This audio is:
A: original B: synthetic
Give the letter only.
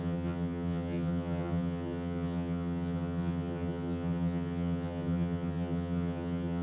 B